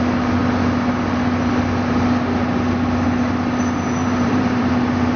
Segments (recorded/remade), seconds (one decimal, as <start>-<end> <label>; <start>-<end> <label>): 0.0-4.0 recorded; 4.0-4.7 remade; 4.7-5.2 recorded

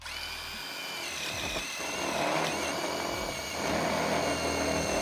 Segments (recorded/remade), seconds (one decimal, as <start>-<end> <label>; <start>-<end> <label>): 0.0-0.8 recorded; 0.8-3.7 remade; 3.7-5.0 recorded

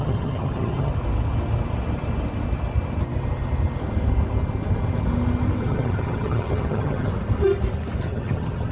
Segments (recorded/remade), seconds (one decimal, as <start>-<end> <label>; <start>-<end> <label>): 0.0-0.9 remade; 0.9-5.6 recorded; 5.6-7.1 remade; 7.1-8.0 recorded; 8.0-8.7 remade

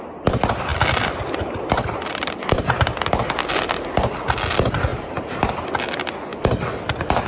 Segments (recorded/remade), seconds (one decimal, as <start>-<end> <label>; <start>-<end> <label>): 0.0-4.9 recorded; 4.9-5.5 remade; 5.5-7.3 recorded

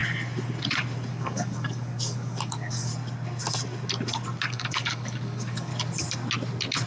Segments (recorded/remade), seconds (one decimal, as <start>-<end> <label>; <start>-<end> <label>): 0.0-1.1 recorded; 1.1-2.9 remade; 2.9-4.5 recorded; 4.5-5.7 remade; 5.7-6.9 recorded